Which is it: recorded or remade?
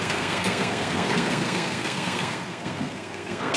remade